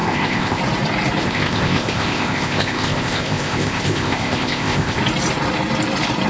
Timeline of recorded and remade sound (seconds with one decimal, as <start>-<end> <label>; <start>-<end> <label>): 0.0-0.6 remade; 0.6-1.2 recorded; 1.2-5.0 remade; 5.0-6.3 recorded